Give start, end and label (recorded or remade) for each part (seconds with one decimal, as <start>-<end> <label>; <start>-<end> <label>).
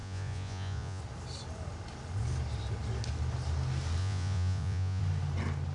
0.0-1.0 remade; 1.0-4.0 recorded; 4.0-5.0 remade; 5.0-5.7 recorded